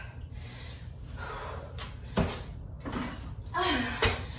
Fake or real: real